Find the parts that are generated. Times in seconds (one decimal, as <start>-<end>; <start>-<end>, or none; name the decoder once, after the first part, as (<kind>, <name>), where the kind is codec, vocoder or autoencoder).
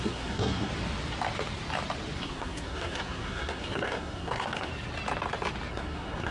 0.0-0.7 (codec, SNAC); 2.2-4.7; 5.7-6.3